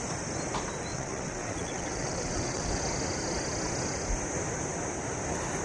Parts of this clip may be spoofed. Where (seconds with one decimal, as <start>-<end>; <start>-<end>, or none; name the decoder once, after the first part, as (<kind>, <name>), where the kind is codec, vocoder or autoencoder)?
0.9-2.8 (vocoder, WaveNeXt)